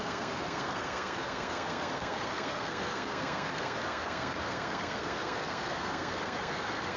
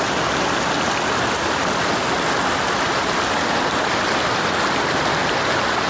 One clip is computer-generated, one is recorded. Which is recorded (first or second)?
second